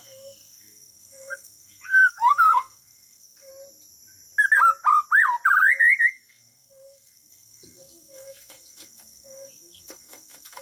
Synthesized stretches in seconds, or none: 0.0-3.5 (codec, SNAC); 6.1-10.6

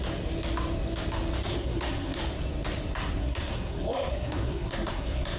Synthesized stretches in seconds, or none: 1.5-2.2 (codec, SNAC); 3.2-5.4